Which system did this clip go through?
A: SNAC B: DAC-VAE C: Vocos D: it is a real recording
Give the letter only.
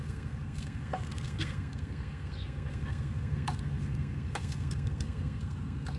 A